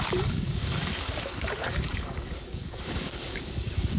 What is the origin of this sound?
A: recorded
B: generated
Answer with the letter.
B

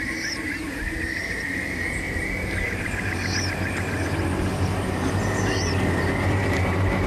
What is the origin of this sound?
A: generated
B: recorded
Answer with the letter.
B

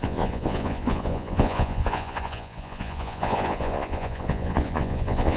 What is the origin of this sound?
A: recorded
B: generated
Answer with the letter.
B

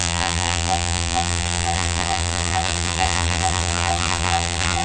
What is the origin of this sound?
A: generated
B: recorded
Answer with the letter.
A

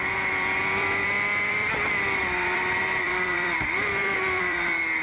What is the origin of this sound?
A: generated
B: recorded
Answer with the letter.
A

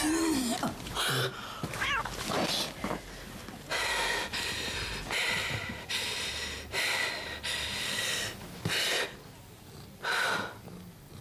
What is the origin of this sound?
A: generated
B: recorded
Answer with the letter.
B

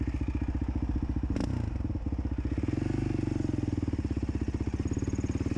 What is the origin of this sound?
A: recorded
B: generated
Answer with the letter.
A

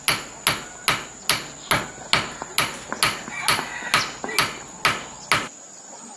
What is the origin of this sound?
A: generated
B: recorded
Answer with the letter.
B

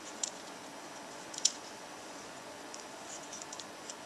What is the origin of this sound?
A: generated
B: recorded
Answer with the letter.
A